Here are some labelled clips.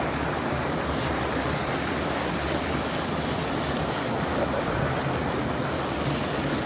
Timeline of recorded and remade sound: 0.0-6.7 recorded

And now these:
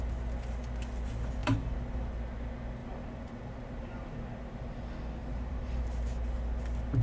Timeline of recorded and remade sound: 0.0-1.4 recorded; 1.4-2.1 remade; 2.1-2.8 recorded; 2.8-4.2 remade; 4.2-5.2 recorded; 5.2-5.9 remade; 5.9-7.0 recorded

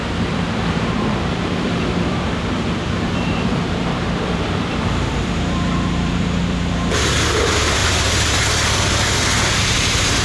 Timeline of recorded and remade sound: 0.0-7.8 remade; 7.8-9.6 recorded; 9.6-10.2 remade

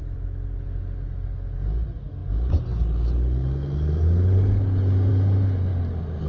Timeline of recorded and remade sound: 0.0-6.3 recorded

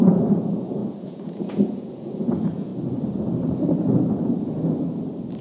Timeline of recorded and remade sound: 0.0-2.7 remade; 2.7-5.4 recorded